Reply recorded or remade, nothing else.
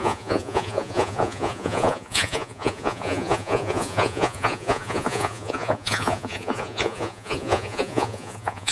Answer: remade